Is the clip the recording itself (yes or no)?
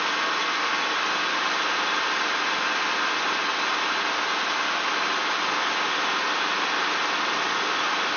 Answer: yes